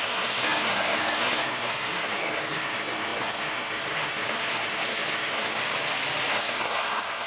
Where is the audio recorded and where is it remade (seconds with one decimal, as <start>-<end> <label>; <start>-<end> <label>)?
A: 0.0-5.6 remade; 5.6-6.3 recorded; 6.3-7.3 remade